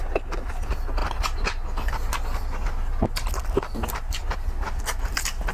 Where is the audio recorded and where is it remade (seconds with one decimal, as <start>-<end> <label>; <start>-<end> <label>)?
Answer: 0.0-4.2 recorded; 4.2-4.8 remade; 4.8-5.5 recorded